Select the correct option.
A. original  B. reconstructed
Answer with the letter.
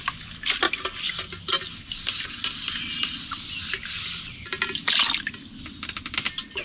A